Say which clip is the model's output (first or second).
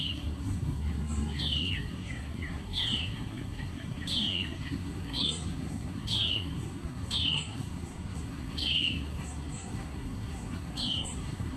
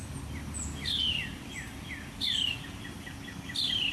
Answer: first